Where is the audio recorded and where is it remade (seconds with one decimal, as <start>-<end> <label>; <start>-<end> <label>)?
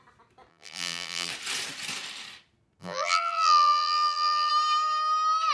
0.0-0.5 recorded; 0.5-1.3 remade; 1.3-2.8 recorded; 2.8-4.5 remade; 4.5-5.5 recorded